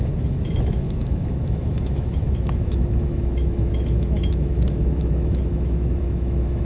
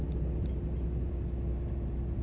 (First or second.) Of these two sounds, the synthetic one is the first